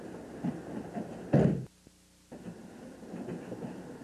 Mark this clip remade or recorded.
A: recorded